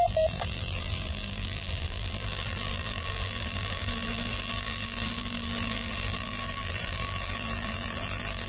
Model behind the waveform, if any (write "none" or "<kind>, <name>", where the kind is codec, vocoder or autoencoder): vocoder, BigVGAN v2